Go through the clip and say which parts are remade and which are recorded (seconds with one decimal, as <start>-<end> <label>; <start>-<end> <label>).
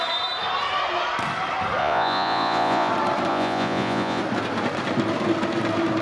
0.0-1.8 recorded; 1.8-2.9 remade; 2.9-3.3 recorded; 3.3-4.2 remade; 4.2-6.0 recorded